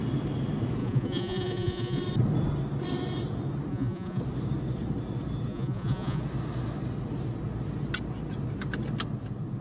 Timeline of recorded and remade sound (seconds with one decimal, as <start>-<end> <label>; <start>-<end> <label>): 0.0-0.8 recorded; 0.8-2.0 remade; 2.0-3.7 recorded; 3.7-4.2 remade; 4.2-5.5 recorded; 5.5-6.2 remade; 6.2-9.6 recorded